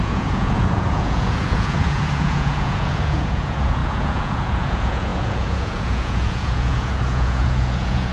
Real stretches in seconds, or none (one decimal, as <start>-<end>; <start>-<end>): none